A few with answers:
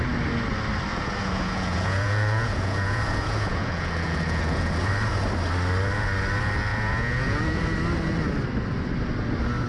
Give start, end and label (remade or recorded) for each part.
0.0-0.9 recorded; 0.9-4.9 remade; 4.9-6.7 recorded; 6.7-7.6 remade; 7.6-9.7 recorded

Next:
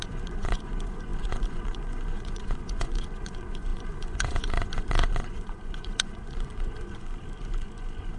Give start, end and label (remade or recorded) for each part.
0.0-8.2 remade

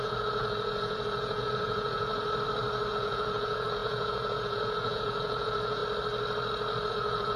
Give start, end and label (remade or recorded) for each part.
0.0-2.1 remade; 2.1-2.9 recorded; 2.9-5.8 remade; 5.8-6.9 recorded; 6.9-7.4 remade

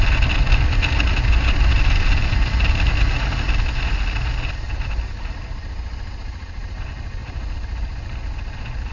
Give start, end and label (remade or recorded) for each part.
0.0-8.9 recorded

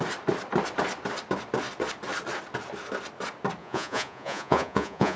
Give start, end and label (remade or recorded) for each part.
0.0-3.6 recorded; 3.6-5.2 remade